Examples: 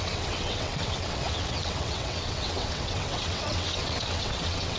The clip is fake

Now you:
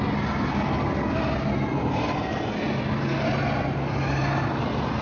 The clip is real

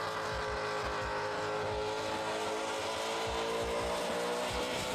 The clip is real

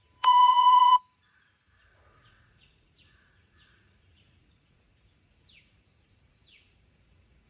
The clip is fake